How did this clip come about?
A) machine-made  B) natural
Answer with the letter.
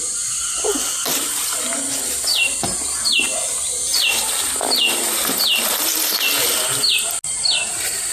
B